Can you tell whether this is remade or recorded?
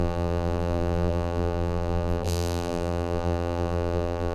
remade